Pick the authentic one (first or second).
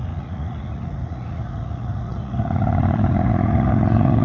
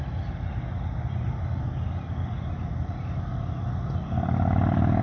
second